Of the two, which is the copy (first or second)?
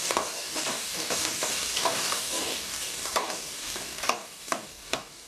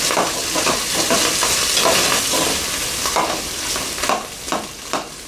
first